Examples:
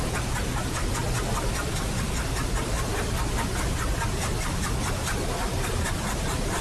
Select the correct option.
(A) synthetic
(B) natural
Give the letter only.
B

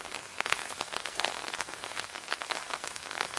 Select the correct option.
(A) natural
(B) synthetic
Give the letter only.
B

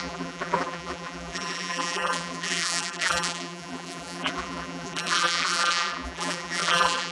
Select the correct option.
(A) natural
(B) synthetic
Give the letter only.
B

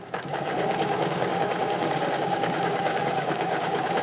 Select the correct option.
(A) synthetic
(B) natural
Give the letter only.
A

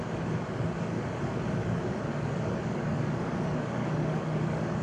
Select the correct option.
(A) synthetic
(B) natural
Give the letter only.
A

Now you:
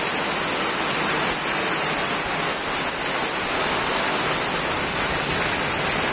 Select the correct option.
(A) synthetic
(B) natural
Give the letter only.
B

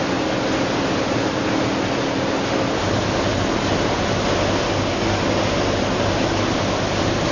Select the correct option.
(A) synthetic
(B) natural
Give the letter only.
B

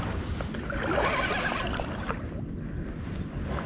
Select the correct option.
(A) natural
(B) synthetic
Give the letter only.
A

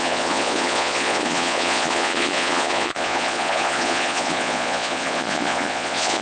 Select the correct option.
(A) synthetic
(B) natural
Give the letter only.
A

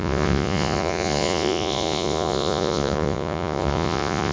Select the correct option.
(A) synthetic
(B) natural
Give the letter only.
A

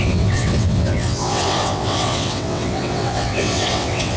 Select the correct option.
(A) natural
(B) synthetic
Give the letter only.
B